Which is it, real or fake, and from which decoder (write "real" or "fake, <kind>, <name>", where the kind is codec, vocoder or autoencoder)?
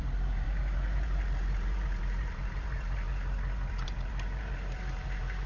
fake, vocoder, BigVGAN v2